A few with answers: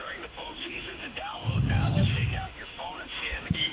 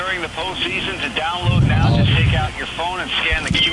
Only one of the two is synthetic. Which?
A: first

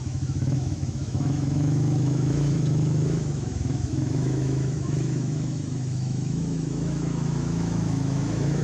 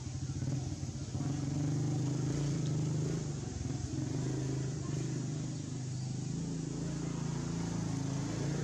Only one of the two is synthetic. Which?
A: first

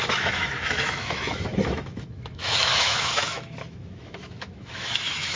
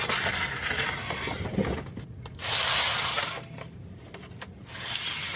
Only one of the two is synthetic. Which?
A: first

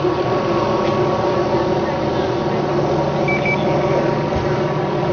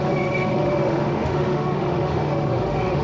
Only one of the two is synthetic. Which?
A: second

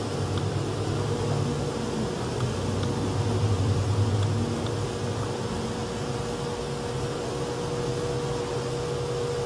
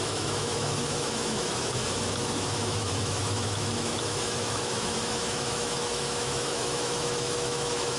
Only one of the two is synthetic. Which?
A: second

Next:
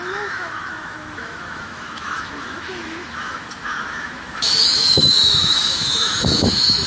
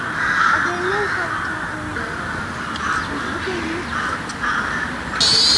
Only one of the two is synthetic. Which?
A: first